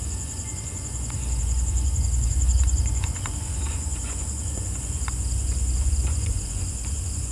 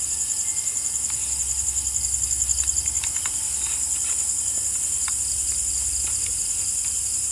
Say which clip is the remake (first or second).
first